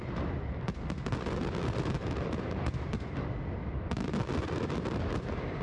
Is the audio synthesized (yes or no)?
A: yes